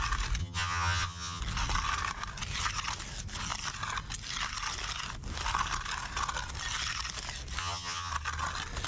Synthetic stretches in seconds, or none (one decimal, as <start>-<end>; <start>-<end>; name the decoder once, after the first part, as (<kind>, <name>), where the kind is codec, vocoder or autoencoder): 0.4-1.4 (vocoder, HiFi-GAN); 7.6-8.1